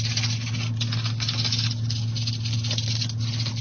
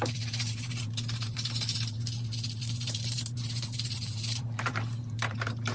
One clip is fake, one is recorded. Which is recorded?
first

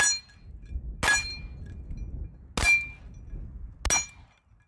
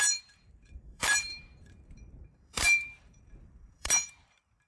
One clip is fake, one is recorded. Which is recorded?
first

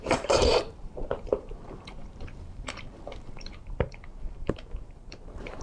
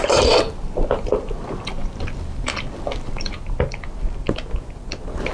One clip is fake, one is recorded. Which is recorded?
second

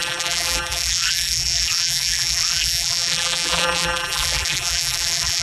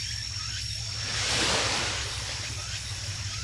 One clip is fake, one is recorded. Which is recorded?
second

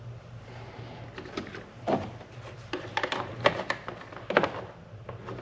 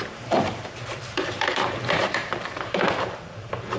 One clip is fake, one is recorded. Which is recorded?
first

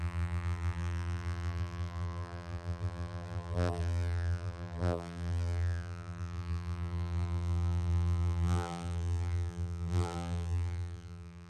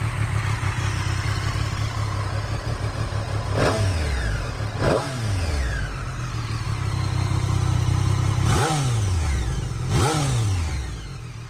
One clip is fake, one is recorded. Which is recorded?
second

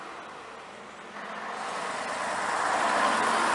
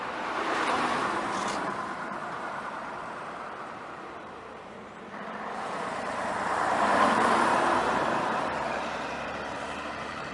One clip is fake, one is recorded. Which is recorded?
first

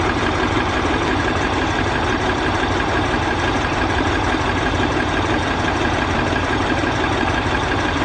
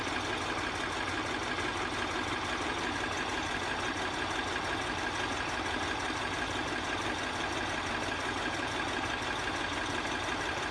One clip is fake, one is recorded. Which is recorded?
second